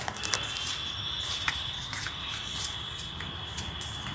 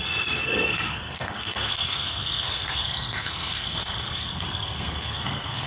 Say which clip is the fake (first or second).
second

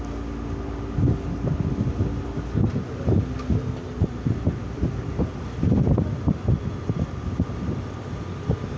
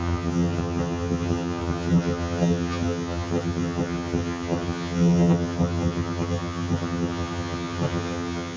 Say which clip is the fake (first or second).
second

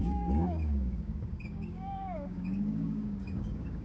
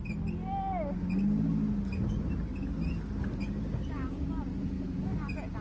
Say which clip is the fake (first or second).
first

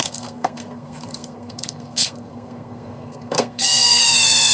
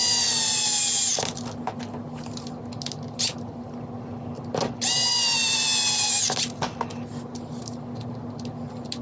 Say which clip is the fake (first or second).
first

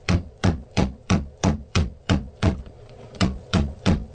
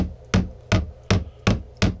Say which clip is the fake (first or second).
first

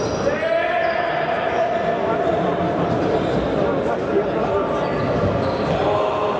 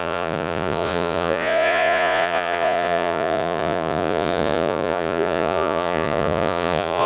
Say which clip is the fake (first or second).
second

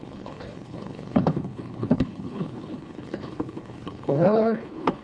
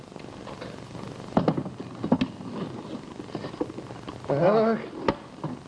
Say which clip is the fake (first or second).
first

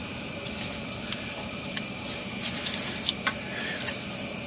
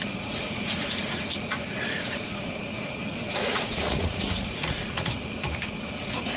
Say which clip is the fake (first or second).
second